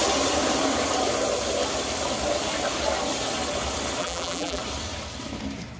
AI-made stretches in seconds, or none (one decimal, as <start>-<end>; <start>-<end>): 4.0-4.6